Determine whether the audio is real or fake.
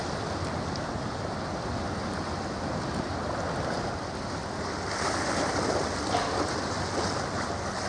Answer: real